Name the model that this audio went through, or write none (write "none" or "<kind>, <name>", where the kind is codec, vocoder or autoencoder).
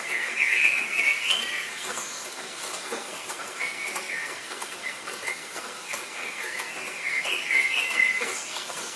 codec, SNAC